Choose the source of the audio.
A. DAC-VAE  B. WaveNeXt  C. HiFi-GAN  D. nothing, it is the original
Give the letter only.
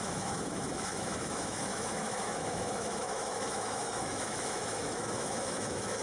A